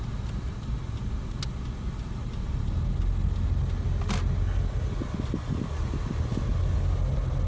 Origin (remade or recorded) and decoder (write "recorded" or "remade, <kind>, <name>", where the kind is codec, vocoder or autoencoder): recorded